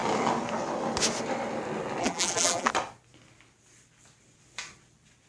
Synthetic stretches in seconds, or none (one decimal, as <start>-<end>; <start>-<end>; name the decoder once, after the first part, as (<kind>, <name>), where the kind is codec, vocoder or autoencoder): 2.0-2.7 (vocoder, BigVGAN v2)